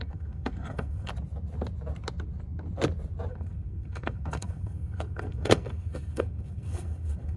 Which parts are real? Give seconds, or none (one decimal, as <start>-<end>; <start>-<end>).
1.1-3.3